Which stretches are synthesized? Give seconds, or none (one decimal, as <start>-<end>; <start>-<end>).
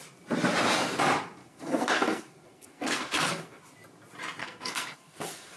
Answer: 1.4-3.6; 4.4-5.6